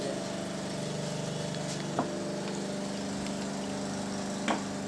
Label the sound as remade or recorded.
recorded